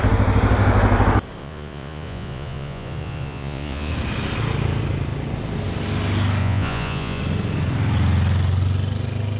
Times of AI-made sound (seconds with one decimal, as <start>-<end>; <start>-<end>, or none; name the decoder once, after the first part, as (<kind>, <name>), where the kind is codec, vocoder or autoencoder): 1.4-3.9 (vocoder, Vocos); 6.4-7.2